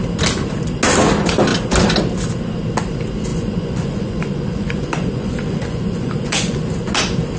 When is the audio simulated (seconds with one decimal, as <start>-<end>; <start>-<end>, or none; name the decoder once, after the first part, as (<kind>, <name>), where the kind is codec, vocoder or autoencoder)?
3.3-6.6 (vocoder, Vocos)